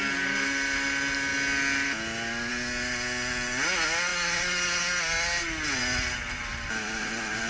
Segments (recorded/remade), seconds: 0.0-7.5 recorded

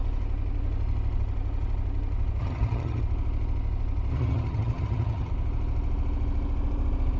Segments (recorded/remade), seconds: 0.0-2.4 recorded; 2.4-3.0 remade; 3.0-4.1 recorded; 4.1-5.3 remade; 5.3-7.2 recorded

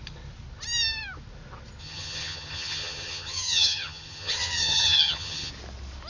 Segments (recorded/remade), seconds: 0.0-1.8 recorded; 1.8-5.5 remade; 5.5-6.1 recorded